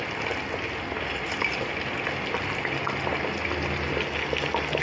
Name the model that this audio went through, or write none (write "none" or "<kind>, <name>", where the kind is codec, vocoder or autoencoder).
none